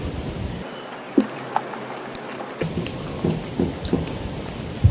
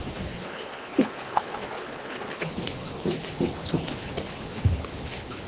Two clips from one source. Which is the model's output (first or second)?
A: second